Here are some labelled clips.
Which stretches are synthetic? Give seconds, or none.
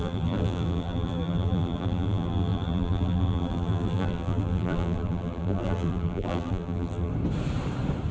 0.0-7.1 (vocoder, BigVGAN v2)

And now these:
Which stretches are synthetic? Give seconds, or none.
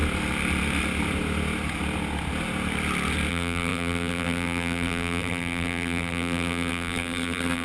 3.3-7.6 (vocoder, BigVGAN v2)